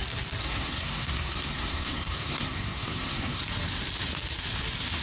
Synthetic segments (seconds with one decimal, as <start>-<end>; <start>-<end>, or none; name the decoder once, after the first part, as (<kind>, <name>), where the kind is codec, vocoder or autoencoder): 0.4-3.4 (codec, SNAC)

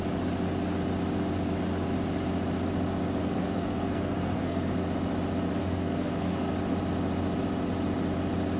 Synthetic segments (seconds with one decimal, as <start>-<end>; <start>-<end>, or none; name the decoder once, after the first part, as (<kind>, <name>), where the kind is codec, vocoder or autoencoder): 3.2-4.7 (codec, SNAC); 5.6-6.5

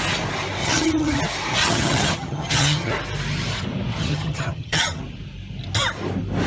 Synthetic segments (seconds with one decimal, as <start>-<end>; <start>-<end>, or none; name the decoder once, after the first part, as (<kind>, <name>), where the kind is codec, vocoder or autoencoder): 0.6-1.2 (vocoder, HiFi-GAN); 1.6-2.9; 4.0-5.0